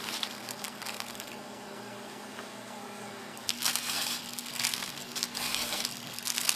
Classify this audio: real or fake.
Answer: fake